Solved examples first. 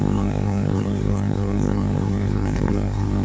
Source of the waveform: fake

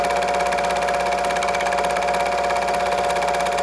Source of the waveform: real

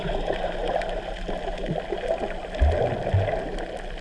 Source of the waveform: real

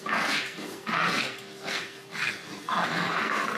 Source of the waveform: fake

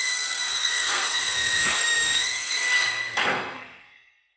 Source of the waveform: fake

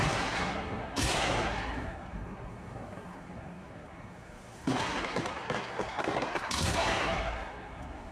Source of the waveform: fake